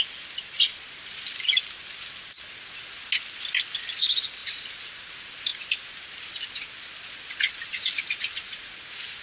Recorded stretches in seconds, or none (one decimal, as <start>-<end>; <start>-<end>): 0.0-9.2

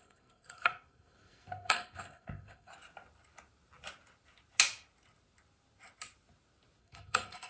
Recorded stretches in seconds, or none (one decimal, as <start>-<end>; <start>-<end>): 2.7-6.8